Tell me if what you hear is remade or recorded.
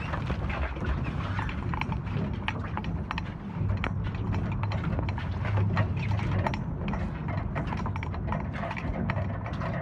recorded